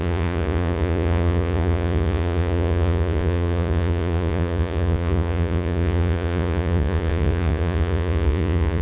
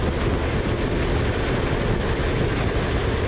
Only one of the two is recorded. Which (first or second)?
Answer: second